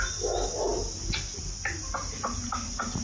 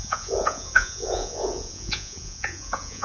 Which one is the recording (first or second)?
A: first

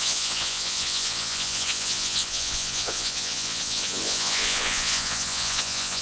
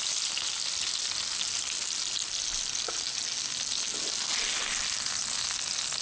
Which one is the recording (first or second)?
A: second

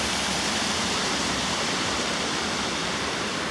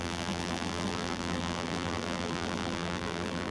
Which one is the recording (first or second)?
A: first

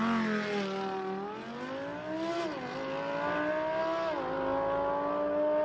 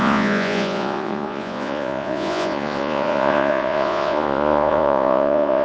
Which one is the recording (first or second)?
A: first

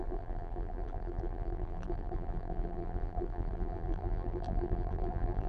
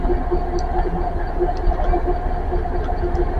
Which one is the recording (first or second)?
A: second